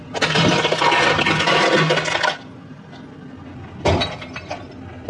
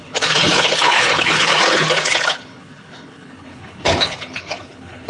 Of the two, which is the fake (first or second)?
second